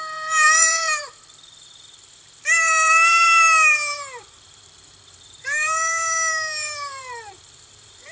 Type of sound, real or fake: fake